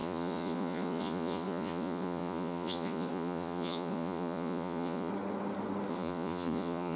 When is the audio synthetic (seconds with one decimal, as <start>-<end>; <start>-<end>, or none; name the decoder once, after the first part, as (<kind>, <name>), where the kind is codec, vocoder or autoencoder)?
0.0-5.1 (vocoder, Vocos); 5.9-7.0